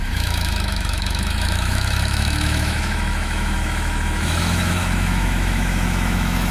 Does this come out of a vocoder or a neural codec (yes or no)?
yes